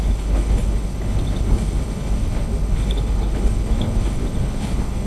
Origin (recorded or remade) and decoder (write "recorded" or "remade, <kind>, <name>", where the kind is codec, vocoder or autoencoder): remade, codec, HILCodec